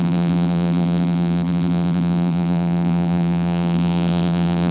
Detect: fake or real fake